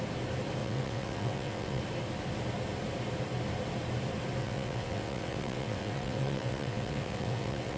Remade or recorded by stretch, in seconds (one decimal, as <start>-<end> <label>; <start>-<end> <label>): 0.0-0.6 recorded; 0.6-1.8 remade; 1.8-4.4 recorded; 4.4-7.8 remade